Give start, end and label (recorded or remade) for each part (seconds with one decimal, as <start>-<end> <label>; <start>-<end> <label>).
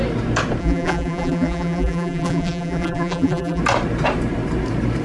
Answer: 0.0-0.6 recorded; 0.6-3.6 remade; 3.6-5.0 recorded